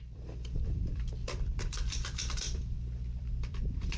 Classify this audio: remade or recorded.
remade